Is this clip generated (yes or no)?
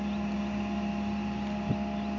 yes